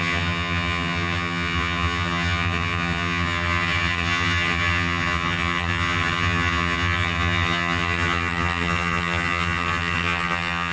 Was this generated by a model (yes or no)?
yes